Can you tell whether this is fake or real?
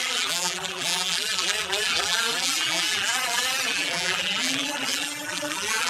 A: fake